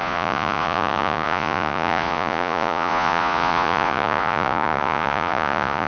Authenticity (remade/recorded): remade